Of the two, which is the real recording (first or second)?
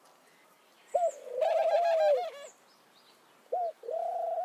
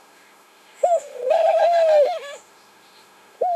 first